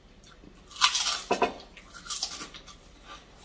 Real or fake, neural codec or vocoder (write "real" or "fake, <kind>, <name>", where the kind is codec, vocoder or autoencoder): real